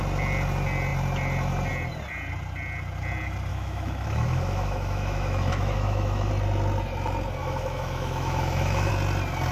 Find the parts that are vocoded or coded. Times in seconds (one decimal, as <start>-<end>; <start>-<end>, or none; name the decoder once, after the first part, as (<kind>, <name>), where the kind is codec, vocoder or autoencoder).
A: 3.5-6.3 (autoencoder, DAC-VAE); 7.4-8.9